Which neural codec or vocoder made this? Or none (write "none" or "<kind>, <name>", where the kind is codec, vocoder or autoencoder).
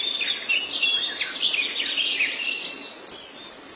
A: none